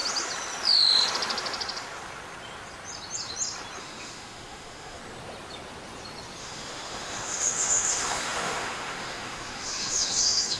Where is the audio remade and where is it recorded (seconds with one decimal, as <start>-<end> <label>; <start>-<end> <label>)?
0.0-3.8 recorded; 3.8-5.0 remade; 5.0-6.4 recorded; 6.4-10.6 remade